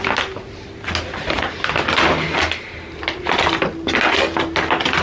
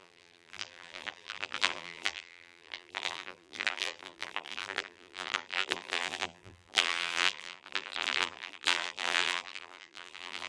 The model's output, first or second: second